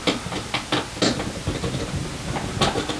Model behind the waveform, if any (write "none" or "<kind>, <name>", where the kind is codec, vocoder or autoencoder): none